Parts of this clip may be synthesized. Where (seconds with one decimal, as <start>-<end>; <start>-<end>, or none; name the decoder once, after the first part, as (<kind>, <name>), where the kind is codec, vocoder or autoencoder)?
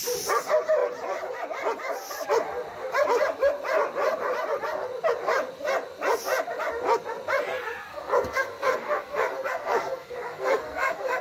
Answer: 7.9-11.2 (codec, SNAC)